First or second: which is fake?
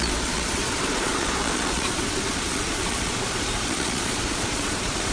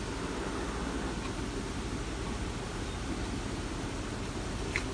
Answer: first